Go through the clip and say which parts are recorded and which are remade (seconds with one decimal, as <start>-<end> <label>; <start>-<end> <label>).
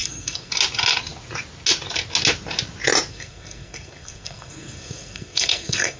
0.0-0.5 remade; 0.5-3.1 recorded; 3.1-6.0 remade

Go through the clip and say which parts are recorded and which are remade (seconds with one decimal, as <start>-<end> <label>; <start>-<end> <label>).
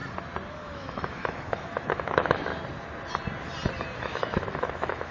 0.0-0.5 recorded; 0.5-2.5 remade; 2.5-4.0 recorded; 4.0-5.1 remade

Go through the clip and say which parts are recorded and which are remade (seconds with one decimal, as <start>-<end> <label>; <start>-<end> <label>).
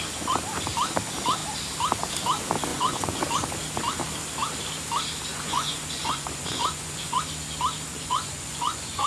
0.0-2.7 recorded; 2.7-3.2 remade; 3.2-5.3 recorded; 5.3-7.2 remade; 7.2-7.9 recorded; 7.9-9.1 remade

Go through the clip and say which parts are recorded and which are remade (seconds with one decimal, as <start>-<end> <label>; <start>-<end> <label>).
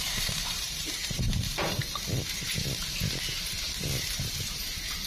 0.0-1.8 remade; 1.8-5.1 recorded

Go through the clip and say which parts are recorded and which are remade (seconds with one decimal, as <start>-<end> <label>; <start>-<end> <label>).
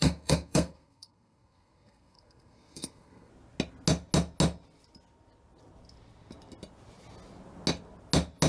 0.0-3.3 remade; 3.3-8.5 recorded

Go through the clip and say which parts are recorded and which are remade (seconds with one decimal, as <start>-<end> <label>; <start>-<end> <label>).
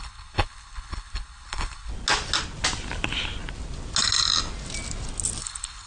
0.0-1.9 remade; 1.9-5.4 recorded; 5.4-5.9 remade